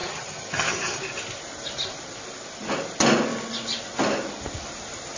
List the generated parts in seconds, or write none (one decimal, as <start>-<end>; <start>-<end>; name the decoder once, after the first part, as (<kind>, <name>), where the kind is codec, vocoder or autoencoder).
0.0-1.0 (vocoder, HiFi-GAN)